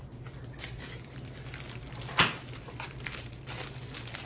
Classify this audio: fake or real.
real